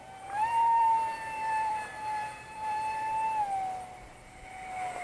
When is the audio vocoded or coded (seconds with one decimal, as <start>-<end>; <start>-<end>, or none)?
0.0-3.0